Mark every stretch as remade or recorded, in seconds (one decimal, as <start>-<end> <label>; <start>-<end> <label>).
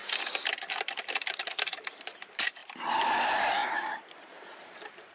0.0-1.8 recorded; 1.8-2.6 remade; 2.6-3.2 recorded; 3.2-3.6 remade; 3.6-4.2 recorded; 4.2-5.1 remade